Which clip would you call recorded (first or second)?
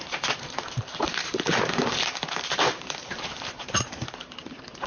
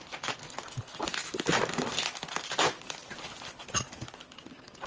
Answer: second